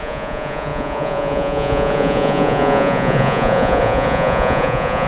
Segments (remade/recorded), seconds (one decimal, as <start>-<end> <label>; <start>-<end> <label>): 0.0-5.1 remade

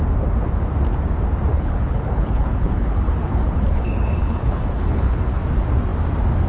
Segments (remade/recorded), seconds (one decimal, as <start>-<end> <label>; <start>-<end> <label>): 0.0-1.5 recorded; 1.5-5.4 remade; 5.4-6.5 recorded